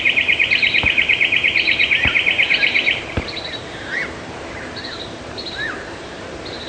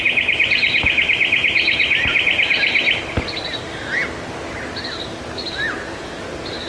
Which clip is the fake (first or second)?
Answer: first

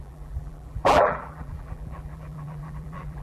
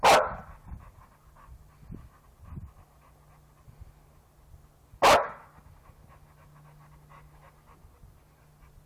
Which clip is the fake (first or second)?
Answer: first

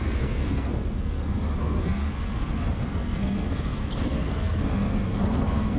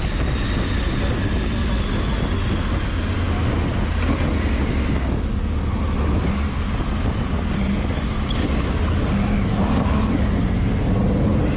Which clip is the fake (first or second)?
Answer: first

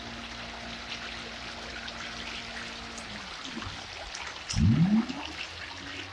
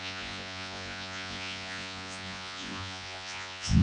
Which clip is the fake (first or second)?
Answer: second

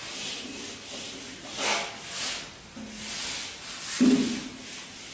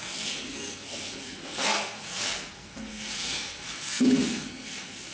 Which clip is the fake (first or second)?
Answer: second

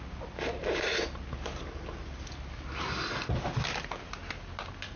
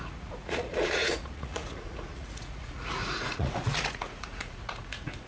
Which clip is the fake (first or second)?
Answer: second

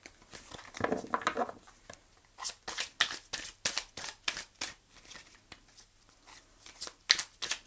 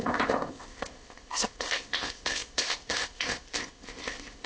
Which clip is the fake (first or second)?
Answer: second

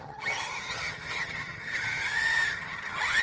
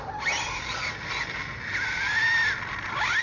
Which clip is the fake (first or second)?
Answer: first